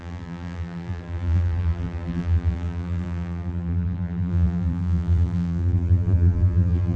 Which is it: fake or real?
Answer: fake